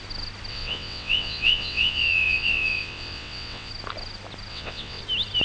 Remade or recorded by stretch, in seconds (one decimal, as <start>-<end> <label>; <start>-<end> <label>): 0.0-0.5 recorded; 0.5-3.7 remade; 3.7-4.5 recorded; 4.5-5.0 remade; 5.0-5.4 recorded